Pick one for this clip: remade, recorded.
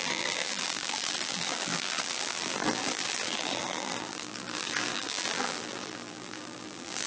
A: remade